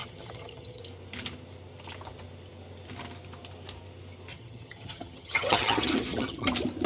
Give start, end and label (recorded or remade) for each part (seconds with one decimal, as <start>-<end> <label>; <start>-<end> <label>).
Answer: 0.0-0.8 remade; 0.8-4.3 recorded; 4.3-6.5 remade; 6.5-6.9 recorded